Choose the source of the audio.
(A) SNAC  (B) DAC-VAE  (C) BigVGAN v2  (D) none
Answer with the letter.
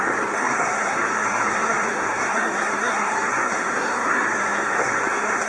A